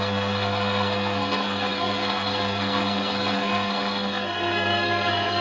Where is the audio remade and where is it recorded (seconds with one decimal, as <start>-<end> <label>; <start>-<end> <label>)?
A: 0.0-5.4 remade

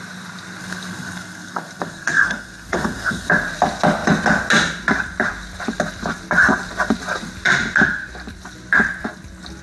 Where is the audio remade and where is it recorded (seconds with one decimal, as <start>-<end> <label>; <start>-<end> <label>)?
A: 0.0-0.6 recorded; 0.6-3.3 remade; 3.3-9.6 recorded

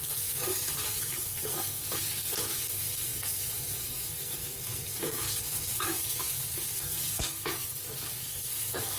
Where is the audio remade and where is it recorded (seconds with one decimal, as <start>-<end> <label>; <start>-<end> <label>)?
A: 0.0-9.0 remade